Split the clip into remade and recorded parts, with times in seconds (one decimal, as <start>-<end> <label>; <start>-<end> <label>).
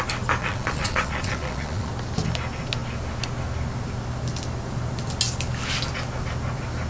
0.0-0.4 recorded; 0.4-1.9 remade; 1.9-6.9 recorded